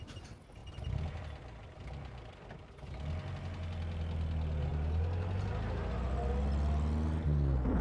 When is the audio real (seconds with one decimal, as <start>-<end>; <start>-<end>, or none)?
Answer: 0.0-7.8